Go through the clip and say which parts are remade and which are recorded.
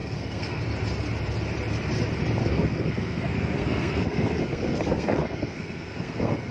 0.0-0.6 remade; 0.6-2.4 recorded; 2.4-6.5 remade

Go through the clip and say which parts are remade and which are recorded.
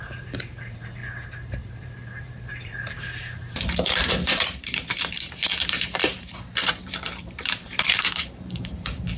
0.0-9.2 remade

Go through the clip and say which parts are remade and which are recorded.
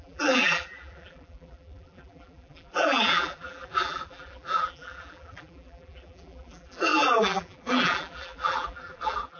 0.0-9.4 remade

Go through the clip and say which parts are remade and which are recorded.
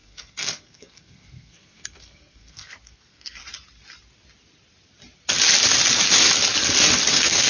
0.0-3.4 remade; 3.4-7.1 recorded; 7.1-7.5 remade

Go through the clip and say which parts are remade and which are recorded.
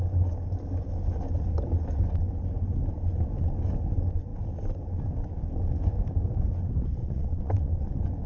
0.0-7.0 recorded; 7.0-7.7 remade; 7.7-8.3 recorded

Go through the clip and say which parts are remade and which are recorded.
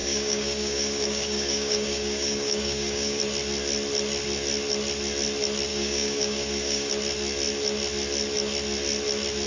0.0-3.2 remade; 3.2-5.7 recorded; 5.7-6.9 remade; 6.9-9.5 recorded